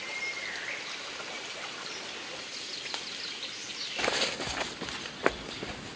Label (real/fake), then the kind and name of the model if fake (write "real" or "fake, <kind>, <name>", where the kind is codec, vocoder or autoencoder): real